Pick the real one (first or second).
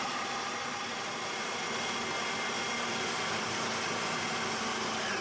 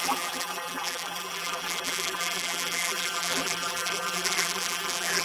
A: first